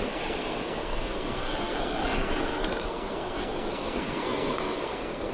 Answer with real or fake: fake